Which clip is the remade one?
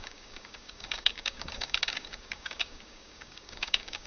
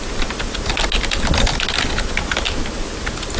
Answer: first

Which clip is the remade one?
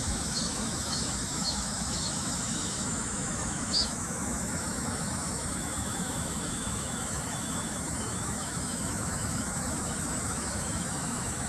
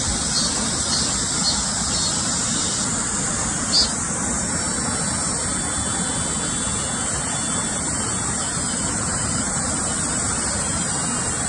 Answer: first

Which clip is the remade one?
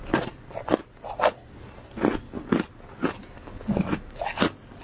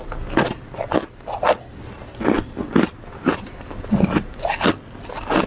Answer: second